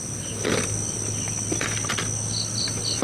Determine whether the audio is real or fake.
real